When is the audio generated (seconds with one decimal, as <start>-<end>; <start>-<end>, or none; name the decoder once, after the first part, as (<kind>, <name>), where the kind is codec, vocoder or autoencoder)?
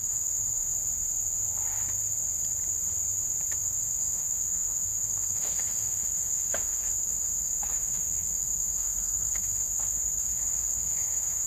0.0-0.7 (autoencoder, DAC-VAE); 3.6-11.5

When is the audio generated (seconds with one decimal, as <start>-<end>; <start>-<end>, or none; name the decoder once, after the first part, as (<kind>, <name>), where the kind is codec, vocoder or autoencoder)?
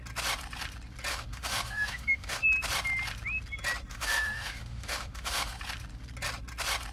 1.1-2.4 (autoencoder, DAC-VAE); 3.9-5.6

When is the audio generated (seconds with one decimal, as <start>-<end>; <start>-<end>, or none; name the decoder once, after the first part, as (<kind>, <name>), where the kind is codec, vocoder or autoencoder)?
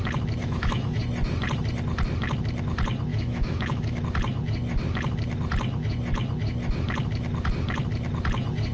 0.4-1.0 (autoencoder, DAC-VAE); 3.1-4.0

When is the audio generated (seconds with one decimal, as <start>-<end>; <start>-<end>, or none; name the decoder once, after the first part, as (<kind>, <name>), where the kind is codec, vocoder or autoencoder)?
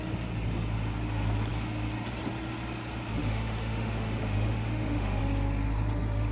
3.2-5.2 (autoencoder, DAC-VAE)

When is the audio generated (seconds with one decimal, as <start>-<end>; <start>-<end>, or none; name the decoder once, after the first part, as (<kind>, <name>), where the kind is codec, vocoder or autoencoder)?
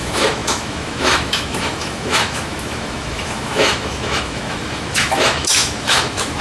0.0-6.4 (autoencoder, DAC-VAE)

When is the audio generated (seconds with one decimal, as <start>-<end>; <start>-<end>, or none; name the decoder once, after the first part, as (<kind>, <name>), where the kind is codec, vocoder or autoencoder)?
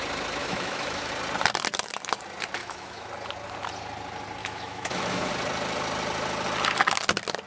0.4-1.1 (autoencoder, DAC-VAE); 2.6-3.1; 4.4-5.3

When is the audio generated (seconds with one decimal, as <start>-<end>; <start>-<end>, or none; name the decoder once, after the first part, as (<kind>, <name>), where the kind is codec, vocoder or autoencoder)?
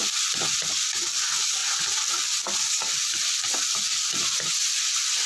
none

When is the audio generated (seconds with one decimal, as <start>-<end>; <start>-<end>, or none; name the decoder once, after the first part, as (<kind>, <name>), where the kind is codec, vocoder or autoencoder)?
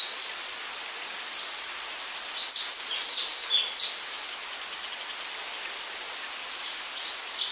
none